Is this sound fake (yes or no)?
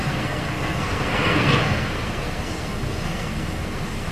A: yes